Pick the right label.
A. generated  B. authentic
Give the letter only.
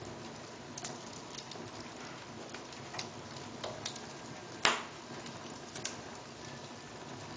B